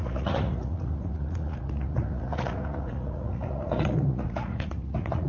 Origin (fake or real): fake